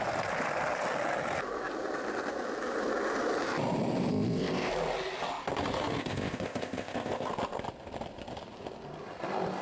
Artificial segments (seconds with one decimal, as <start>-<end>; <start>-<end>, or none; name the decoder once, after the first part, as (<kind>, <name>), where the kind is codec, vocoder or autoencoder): 4.1-4.7 (codec, ZipCodec); 6.0-7.3